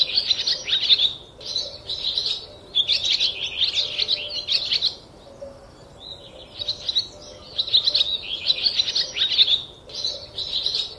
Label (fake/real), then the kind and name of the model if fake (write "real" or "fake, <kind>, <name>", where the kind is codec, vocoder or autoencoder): real